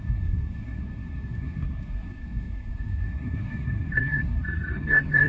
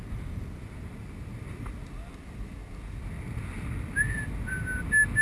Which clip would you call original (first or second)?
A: second